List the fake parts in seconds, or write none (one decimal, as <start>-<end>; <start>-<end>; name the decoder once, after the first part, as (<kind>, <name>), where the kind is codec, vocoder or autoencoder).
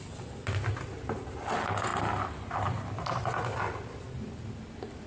none